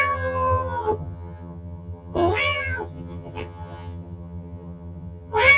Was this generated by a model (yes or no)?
yes